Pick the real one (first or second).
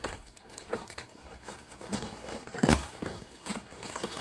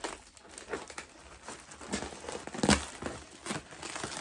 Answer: second